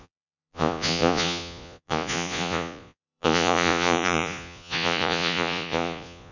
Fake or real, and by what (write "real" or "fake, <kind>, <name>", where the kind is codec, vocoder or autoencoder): fake, vocoder, Vocos